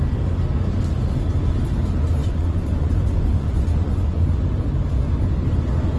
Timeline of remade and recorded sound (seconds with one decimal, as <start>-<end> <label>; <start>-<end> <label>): 0.0-2.2 recorded; 2.2-4.2 remade; 4.2-6.0 recorded